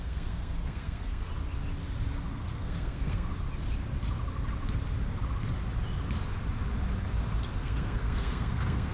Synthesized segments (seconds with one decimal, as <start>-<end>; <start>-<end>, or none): 0.0-1.3; 2.3-3.3; 7.5-8.9